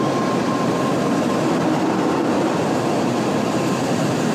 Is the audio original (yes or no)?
no